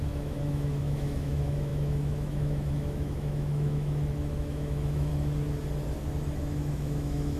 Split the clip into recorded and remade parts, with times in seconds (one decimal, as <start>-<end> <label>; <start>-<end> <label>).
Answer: 0.0-5.1 remade; 5.1-6.4 recorded; 6.4-7.4 remade